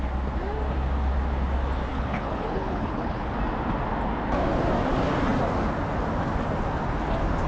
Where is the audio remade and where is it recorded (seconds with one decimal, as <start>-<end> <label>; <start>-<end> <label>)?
0.0-1.9 recorded; 1.9-3.3 remade; 3.3-7.5 recorded